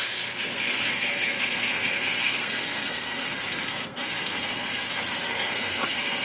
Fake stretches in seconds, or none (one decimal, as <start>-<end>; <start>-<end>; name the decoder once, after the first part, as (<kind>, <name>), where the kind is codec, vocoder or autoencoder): 0.0-6.2 (codec, SNAC)